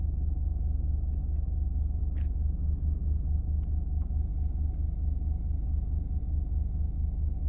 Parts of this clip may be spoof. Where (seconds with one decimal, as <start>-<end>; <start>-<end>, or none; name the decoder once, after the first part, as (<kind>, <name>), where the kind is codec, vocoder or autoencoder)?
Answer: none